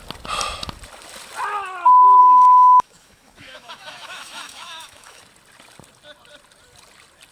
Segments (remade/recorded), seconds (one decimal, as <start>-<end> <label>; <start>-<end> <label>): 0.0-2.2 recorded; 2.2-5.2 remade; 5.2-7.3 recorded